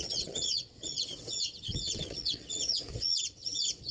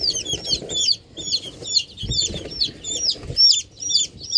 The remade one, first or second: first